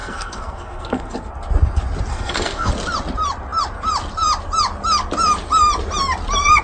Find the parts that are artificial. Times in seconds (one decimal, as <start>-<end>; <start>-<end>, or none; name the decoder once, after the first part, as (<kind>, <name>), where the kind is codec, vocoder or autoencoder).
0.0-1.3 (codec, SNAC); 2.1-2.7

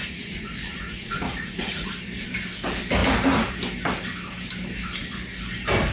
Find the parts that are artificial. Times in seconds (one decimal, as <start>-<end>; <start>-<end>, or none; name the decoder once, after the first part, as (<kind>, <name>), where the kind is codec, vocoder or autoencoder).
0.0-1.9 (vocoder, Vocos)

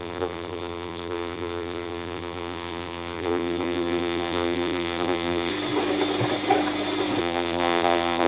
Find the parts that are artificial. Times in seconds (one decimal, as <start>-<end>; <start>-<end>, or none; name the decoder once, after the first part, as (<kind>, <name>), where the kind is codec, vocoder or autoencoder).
0.0-5.5 (vocoder, BigVGAN v2); 7.2-8.3

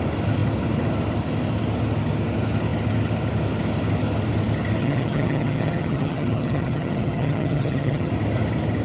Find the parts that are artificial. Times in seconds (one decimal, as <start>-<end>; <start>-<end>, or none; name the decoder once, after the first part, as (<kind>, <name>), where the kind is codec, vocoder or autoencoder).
4.8-8.1 (vocoder, HiFi-GAN)

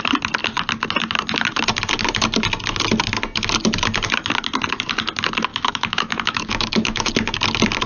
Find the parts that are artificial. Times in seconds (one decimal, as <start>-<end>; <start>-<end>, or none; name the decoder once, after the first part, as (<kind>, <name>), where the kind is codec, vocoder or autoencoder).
5.5-7.1 (autoencoder, DAC-VAE)

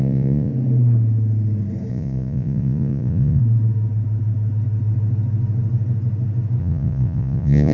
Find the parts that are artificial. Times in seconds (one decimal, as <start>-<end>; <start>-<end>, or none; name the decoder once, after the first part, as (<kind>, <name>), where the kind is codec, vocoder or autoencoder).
0.0-0.5 (vocoder, Vocos); 1.9-3.4; 6.6-7.7

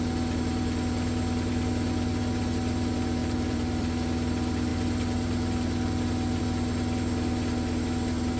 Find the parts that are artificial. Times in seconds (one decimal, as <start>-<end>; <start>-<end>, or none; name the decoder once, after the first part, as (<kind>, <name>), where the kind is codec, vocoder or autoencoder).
3.2-3.9 (vocoder, BigVGAN v2)